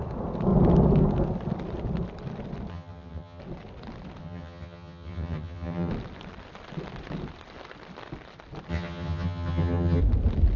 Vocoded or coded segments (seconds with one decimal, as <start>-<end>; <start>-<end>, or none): 2.7-3.4; 4.2-5.9; 8.7-10.0